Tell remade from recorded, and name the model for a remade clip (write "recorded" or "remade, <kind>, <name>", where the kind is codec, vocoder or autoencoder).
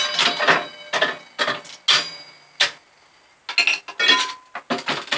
recorded